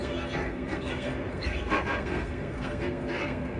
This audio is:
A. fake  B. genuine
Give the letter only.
A